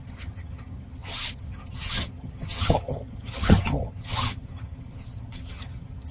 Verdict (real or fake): fake